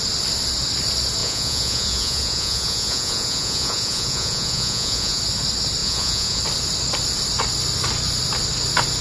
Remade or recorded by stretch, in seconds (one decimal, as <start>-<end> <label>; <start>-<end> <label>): 0.0-1.2 recorded; 1.2-5.2 remade; 5.2-5.8 recorded; 5.8-6.4 remade; 6.4-9.0 recorded